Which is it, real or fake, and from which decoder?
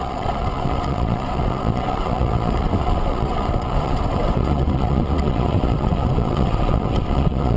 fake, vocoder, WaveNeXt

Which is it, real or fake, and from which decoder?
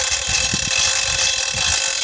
real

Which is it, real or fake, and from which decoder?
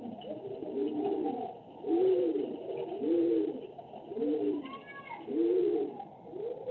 real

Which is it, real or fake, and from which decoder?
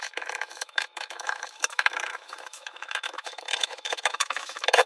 fake, autoencoder, DAC-VAE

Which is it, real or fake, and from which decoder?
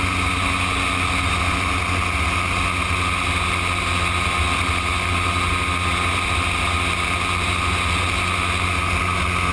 real